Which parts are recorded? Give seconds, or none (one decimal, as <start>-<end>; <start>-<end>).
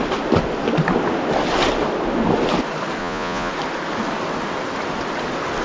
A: 0.0-3.0; 3.5-5.6